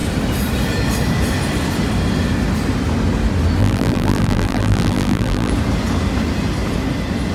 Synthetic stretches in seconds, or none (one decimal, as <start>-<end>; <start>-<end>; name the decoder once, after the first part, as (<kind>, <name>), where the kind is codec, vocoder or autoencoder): 3.6-5.5 (vocoder, BigVGAN v2)